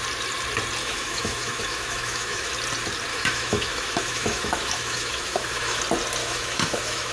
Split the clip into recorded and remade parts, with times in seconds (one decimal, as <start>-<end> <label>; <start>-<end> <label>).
0.0-0.8 recorded; 0.8-2.5 remade; 2.5-3.1 recorded; 3.1-5.8 remade; 5.8-6.2 recorded; 6.2-7.1 remade

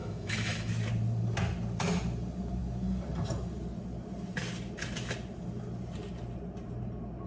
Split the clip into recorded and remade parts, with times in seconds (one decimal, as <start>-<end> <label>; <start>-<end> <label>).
0.0-0.7 remade; 0.7-7.3 recorded

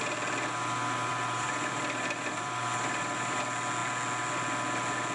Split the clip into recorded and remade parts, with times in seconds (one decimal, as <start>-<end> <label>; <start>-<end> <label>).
0.0-1.1 recorded; 1.1-3.4 remade; 3.4-5.1 recorded

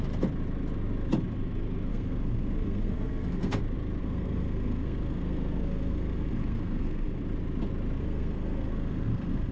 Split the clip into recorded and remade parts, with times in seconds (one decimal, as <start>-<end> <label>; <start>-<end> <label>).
0.0-1.9 recorded; 1.9-3.6 remade; 3.6-4.0 recorded; 4.0-7.2 remade; 7.2-8.0 recorded; 8.0-9.5 remade